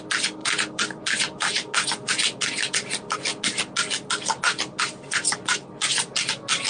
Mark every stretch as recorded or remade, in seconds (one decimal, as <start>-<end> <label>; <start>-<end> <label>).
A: 0.0-0.4 recorded; 0.4-1.0 remade; 1.0-6.7 recorded